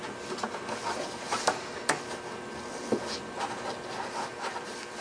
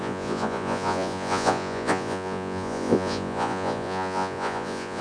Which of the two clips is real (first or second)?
first